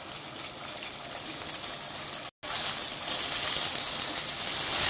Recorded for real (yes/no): yes